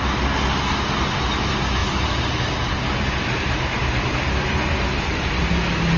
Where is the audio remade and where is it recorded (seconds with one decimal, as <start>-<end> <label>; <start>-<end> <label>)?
0.0-6.0 recorded